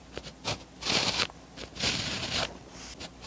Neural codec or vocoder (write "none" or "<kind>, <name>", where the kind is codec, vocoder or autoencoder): none